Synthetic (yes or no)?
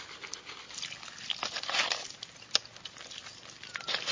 no